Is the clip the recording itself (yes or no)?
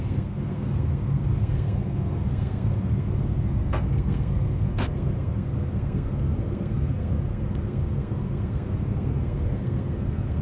no